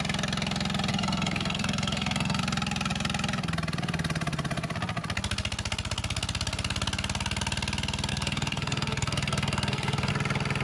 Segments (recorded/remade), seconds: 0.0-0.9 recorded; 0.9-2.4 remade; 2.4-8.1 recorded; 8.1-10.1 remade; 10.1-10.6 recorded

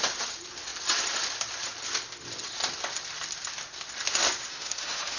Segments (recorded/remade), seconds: 0.0-4.5 recorded; 4.5-5.2 remade

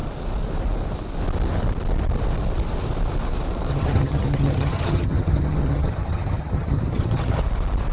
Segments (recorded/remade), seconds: 0.0-3.7 recorded; 3.7-7.4 remade; 7.4-7.9 recorded

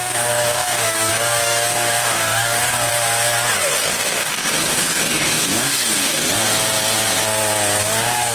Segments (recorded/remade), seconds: 0.0-2.9 remade; 2.9-3.9 recorded; 3.9-6.2 remade; 6.2-7.8 recorded; 7.8-8.3 remade

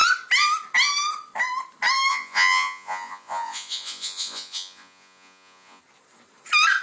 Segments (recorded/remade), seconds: 0.0-2.1 recorded; 2.1-5.8 remade; 5.8-6.8 recorded

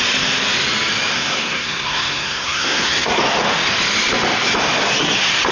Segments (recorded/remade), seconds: 0.0-1.1 recorded; 1.1-3.2 remade; 3.2-5.5 recorded

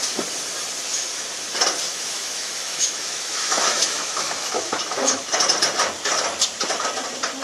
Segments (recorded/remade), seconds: 0.0-1.9 recorded; 1.9-5.2 remade; 5.2-7.4 recorded

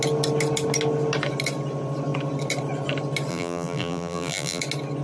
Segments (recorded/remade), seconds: 0.0-3.3 recorded; 3.3-4.6 remade; 4.6-5.0 recorded